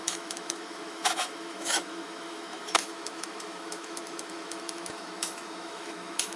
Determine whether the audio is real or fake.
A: fake